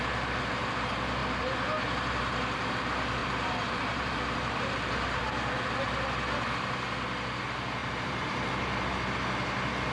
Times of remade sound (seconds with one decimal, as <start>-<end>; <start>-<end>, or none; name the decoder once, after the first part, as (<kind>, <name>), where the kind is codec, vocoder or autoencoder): 3.2-5.2 (vocoder, BigVGAN v2); 7.8-8.5